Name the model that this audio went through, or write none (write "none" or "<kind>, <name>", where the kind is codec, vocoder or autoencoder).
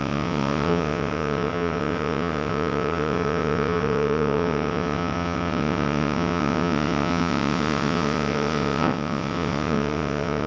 vocoder, WaveNeXt